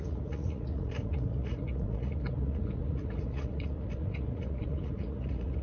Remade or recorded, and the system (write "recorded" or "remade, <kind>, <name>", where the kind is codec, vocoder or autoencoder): remade, vocoder, Vocos